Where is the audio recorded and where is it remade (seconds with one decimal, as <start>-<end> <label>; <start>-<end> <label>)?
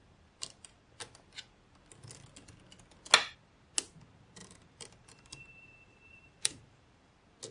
0.0-0.9 remade; 0.9-4.4 recorded; 4.4-7.1 remade; 7.1-7.5 recorded